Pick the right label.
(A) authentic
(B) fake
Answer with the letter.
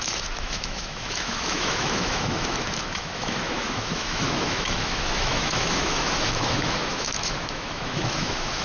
B